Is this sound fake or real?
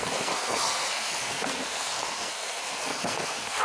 fake